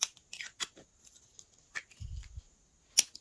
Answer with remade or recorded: recorded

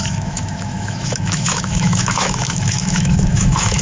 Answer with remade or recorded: remade